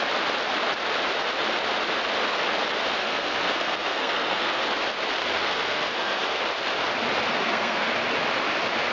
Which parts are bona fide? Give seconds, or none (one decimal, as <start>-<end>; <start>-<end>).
0.0-3.0; 4.6-5.2; 6.4-7.3; 7.9-8.9